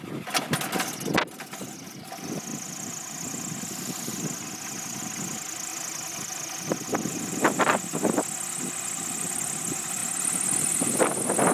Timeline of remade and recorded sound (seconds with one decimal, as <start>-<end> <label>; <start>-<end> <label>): 0.0-11.5 recorded